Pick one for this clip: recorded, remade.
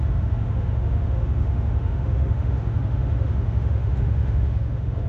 remade